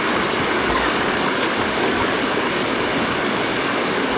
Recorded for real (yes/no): no